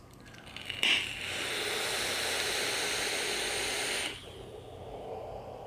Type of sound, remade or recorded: recorded